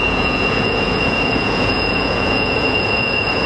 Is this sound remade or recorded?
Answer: remade